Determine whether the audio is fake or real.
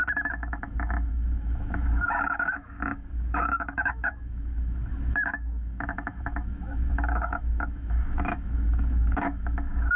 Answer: fake